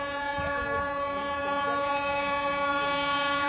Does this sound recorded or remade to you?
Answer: remade